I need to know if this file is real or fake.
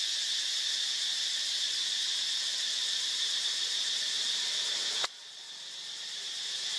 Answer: real